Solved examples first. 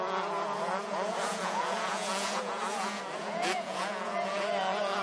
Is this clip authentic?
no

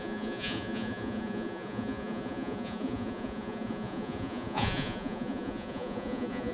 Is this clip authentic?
no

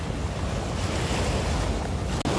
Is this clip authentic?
yes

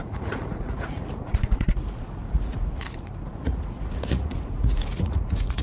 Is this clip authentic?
no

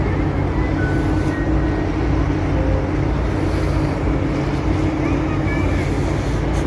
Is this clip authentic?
yes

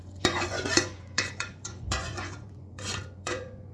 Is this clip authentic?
no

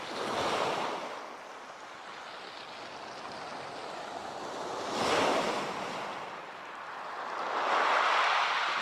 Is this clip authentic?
yes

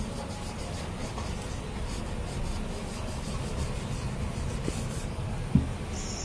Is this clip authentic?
yes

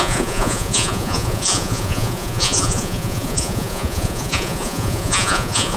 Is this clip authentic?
no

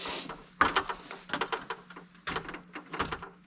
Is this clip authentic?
yes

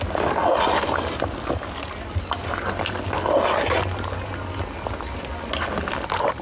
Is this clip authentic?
yes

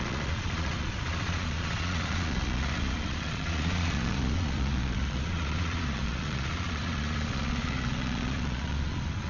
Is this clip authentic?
no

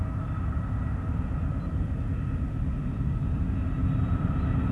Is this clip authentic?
yes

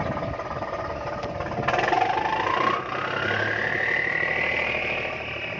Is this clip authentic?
yes